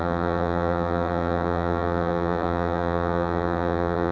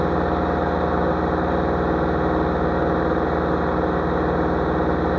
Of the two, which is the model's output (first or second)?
first